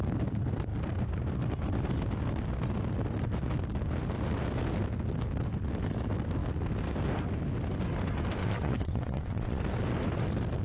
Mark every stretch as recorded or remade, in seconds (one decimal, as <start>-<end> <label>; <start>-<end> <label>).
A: 0.0-8.4 recorded; 8.4-9.6 remade; 9.6-10.6 recorded